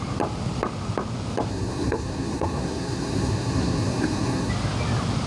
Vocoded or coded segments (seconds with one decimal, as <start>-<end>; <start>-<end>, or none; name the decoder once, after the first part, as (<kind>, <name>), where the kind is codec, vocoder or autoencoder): 1.5-4.5 (codec, SNAC)